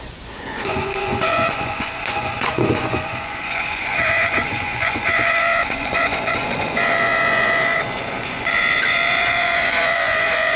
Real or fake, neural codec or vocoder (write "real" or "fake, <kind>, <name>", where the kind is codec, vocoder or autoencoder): fake, vocoder, Vocos